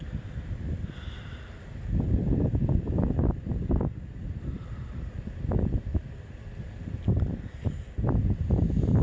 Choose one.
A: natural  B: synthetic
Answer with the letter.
A